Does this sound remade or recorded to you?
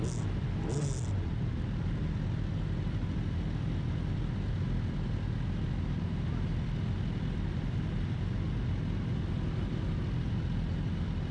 recorded